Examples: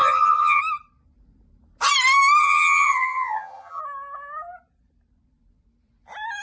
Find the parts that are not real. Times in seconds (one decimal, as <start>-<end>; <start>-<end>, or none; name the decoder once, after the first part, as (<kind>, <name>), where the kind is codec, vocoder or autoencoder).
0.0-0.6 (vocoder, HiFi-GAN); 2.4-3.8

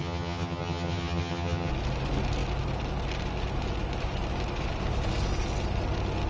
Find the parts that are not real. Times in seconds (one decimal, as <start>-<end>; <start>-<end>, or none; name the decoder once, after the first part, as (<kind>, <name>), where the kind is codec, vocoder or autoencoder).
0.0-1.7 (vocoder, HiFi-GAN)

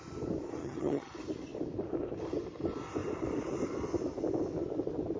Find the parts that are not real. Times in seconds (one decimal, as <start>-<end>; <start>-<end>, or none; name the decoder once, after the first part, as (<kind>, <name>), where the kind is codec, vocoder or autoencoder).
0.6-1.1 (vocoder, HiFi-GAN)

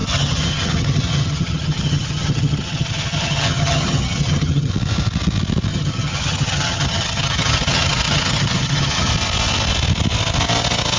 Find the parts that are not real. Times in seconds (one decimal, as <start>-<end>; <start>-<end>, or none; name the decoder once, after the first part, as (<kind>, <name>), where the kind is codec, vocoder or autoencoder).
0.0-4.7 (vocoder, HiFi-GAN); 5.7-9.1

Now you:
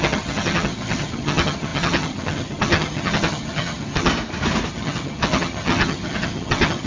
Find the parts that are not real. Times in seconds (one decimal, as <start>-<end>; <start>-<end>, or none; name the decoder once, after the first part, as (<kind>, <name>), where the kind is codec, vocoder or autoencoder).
0.0-4.1 (vocoder, HiFi-GAN); 4.7-6.9